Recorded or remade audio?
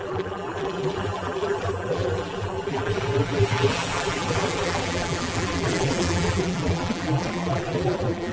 remade